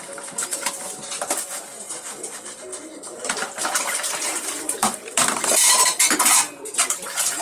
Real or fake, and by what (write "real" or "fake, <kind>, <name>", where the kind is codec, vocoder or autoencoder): fake, vocoder, BigVGAN v2